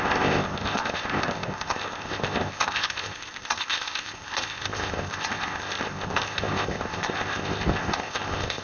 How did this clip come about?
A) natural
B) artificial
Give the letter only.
B